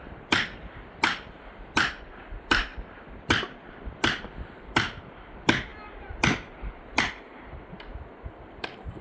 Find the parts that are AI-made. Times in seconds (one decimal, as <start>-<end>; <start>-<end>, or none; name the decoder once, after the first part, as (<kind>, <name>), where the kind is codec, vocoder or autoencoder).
0.0-2.7 (vocoder, BigVGAN v2); 3.7-9.0